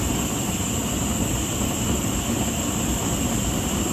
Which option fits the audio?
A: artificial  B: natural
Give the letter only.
A